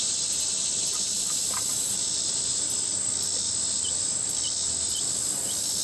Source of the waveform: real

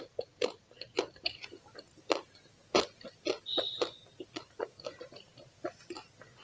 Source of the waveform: real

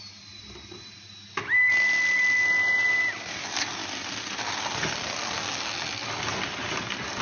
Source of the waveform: real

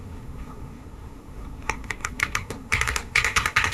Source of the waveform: fake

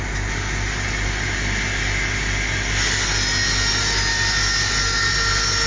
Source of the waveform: real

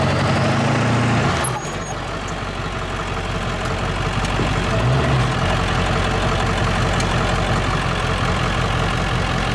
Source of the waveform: real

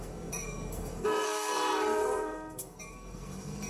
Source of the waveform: fake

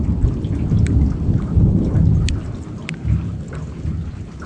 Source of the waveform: real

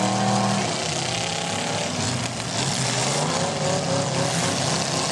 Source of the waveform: real